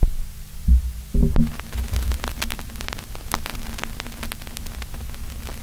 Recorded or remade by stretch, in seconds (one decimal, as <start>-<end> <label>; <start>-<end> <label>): 0.0-5.6 recorded